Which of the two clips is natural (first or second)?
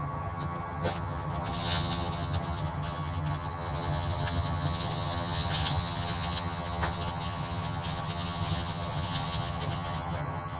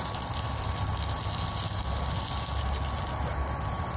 second